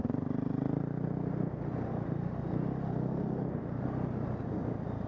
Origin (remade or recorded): recorded